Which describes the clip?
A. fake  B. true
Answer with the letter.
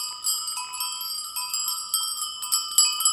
B